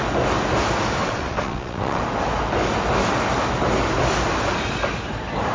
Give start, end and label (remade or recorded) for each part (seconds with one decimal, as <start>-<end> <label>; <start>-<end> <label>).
0.0-1.0 recorded; 1.0-2.0 remade; 2.0-5.5 recorded